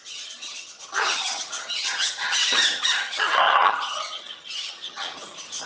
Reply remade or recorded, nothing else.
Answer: remade